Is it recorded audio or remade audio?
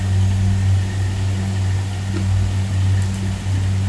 recorded